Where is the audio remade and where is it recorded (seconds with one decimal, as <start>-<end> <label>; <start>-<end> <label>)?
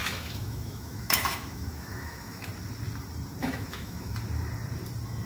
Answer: 0.0-2.5 remade; 2.5-3.4 recorded; 3.4-4.1 remade; 4.1-5.3 recorded